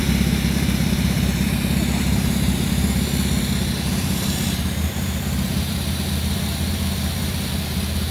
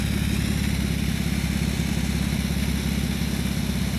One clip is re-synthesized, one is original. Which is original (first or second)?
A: second